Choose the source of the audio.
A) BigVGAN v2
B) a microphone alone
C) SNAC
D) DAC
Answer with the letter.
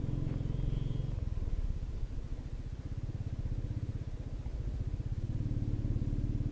B